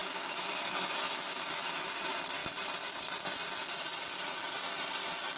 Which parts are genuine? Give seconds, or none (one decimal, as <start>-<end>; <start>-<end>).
1.9-5.4